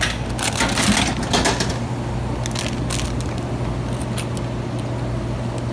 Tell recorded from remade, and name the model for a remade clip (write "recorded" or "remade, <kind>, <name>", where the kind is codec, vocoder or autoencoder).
recorded